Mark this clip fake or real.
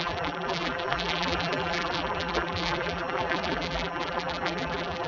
fake